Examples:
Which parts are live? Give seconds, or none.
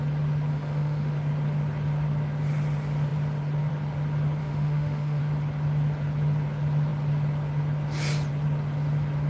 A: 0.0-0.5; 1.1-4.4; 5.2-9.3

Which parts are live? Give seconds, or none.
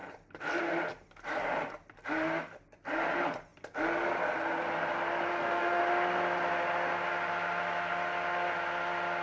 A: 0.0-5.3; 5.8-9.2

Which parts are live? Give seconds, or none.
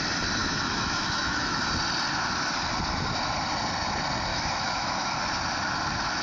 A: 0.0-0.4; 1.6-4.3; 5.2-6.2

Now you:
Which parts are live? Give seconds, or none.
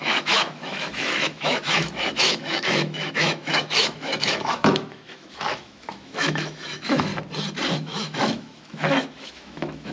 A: 7.1-7.7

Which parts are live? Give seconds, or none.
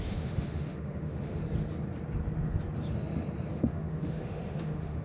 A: 1.4-3.5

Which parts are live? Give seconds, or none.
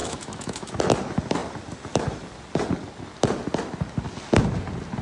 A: 0.8-5.0